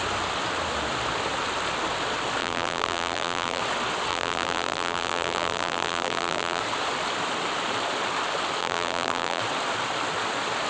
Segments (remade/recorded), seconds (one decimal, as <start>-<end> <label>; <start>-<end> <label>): 0.0-2.4 recorded; 2.4-3.6 remade; 3.6-4.1 recorded; 4.1-6.6 remade; 6.6-8.6 recorded; 8.6-9.4 remade; 9.4-10.7 recorded